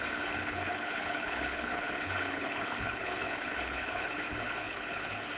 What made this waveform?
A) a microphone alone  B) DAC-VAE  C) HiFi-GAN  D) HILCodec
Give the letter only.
D